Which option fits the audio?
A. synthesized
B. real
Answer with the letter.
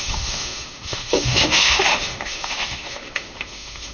A